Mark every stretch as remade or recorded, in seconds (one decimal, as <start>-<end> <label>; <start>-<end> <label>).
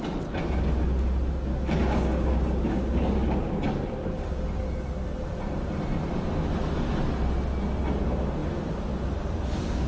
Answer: 0.0-1.5 recorded; 1.5-3.5 remade; 3.5-4.0 recorded; 4.0-4.6 remade; 4.6-9.9 recorded